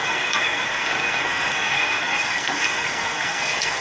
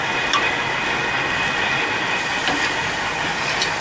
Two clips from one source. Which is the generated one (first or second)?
first